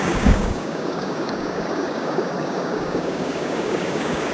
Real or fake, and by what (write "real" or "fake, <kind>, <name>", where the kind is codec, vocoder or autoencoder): fake, codec, DAC